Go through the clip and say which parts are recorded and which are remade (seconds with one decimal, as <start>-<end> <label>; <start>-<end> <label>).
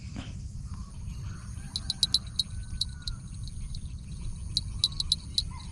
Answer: 0.0-0.9 remade; 0.9-5.7 recorded